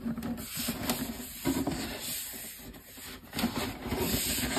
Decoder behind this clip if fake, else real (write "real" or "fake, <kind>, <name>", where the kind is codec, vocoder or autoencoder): real